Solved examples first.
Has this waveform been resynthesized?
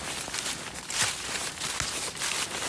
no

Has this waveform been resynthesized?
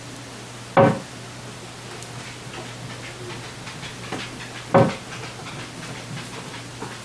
no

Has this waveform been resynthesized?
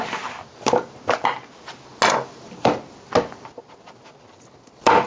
no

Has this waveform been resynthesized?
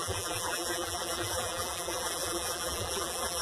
yes